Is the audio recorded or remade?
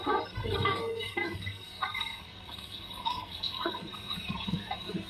remade